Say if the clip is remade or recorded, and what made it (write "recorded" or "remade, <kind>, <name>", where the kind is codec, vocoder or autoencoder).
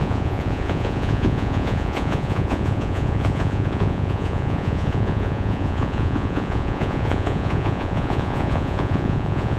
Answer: remade, vocoder, Vocos